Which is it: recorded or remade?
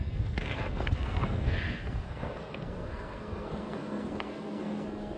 remade